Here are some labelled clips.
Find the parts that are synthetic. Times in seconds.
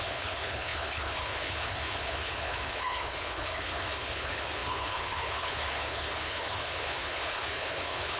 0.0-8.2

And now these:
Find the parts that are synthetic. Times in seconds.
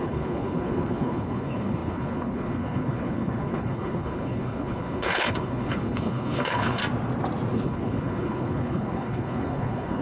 0.0-6.8; 7.5-10.0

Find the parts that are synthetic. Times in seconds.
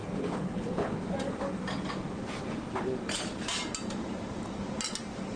0.0-1.0